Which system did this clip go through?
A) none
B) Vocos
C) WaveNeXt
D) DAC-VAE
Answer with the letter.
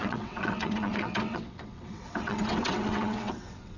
C